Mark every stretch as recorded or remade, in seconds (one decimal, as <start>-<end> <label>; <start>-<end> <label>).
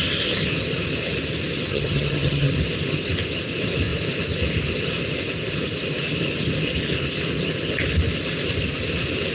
0.0-1.7 recorded; 1.7-2.5 remade; 2.5-9.3 recorded